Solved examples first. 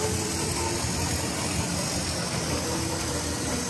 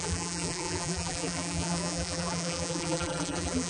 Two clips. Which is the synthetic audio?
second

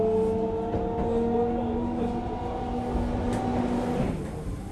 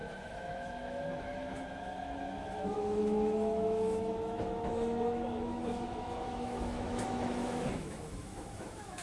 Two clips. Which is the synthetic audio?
second